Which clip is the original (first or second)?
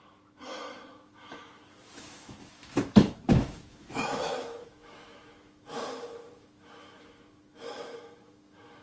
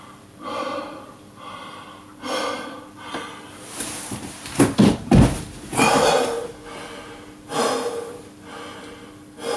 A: second